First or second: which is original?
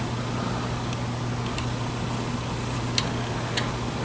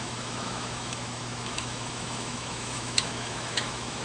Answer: first